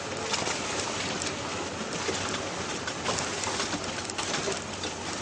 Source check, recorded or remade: recorded